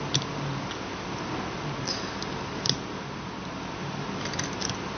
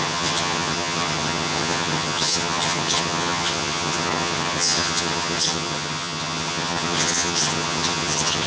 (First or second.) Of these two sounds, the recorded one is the first